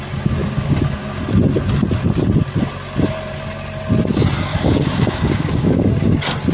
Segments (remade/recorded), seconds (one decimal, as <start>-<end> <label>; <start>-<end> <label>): 0.0-0.4 recorded; 0.4-1.2 remade; 1.2-4.5 recorded; 4.5-5.9 remade; 5.9-6.5 recorded